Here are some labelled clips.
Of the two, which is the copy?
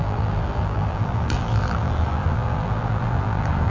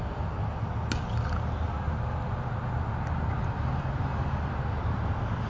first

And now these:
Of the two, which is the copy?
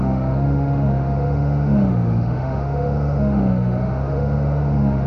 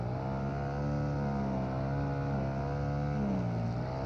first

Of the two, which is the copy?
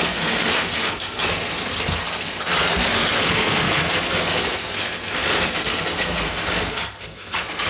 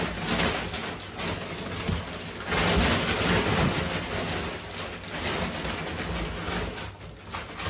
first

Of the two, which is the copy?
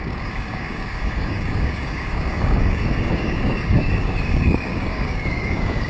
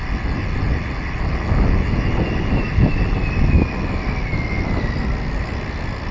first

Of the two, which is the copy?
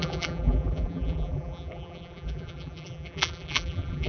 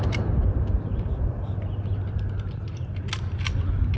first